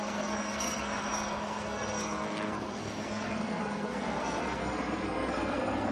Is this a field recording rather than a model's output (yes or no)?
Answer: no